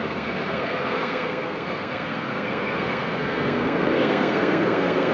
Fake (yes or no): yes